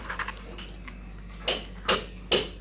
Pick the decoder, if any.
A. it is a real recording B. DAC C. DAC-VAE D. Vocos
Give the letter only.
A